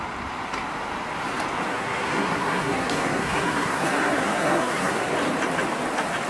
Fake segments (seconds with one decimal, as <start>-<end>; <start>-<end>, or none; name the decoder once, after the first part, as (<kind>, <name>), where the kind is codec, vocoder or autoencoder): 1.7-5.1 (codec, SNAC)